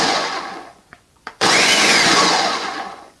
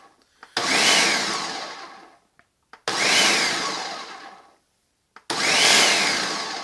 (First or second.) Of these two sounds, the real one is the second